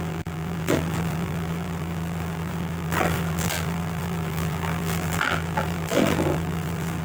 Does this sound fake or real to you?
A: fake